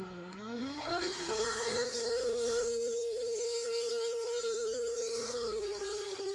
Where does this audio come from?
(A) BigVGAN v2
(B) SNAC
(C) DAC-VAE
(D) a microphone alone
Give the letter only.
B